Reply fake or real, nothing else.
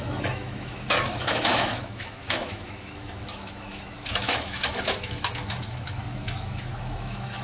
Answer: fake